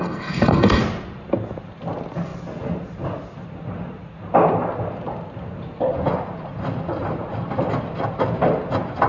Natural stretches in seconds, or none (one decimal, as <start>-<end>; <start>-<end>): 0.8-9.1